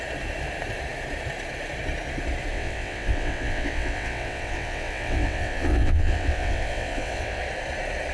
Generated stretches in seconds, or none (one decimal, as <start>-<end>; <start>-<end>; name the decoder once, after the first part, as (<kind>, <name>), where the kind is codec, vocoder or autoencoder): 2.5-7.4 (vocoder, WaveNeXt)